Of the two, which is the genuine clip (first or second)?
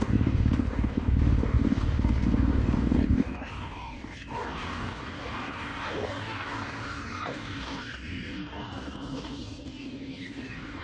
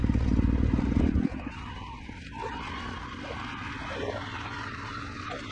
second